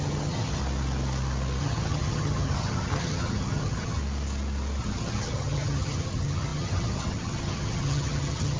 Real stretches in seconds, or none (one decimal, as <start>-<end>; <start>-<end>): 0.6-1.6; 4.0-4.8